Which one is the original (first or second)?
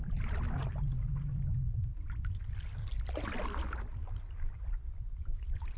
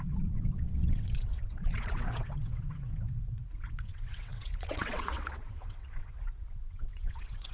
first